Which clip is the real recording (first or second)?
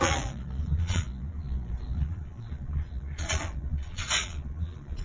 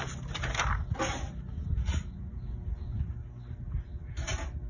second